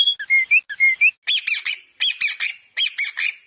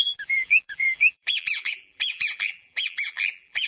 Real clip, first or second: first